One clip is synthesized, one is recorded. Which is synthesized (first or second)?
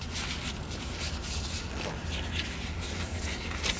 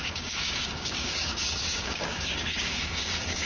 second